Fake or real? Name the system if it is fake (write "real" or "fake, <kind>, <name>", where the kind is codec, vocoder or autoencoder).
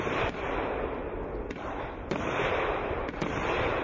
real